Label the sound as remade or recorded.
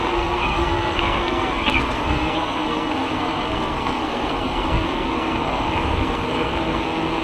remade